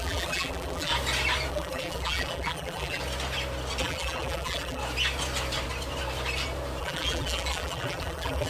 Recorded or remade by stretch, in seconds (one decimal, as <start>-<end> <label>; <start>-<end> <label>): 0.0-0.9 remade; 0.9-1.5 recorded; 1.5-3.0 remade; 3.0-3.8 recorded; 3.8-4.8 remade; 4.8-6.8 recorded; 6.8-8.5 remade